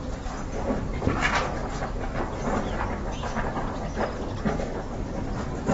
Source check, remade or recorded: recorded